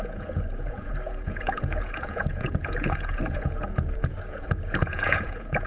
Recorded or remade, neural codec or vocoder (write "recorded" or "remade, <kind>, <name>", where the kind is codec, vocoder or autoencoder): remade, vocoder, Vocos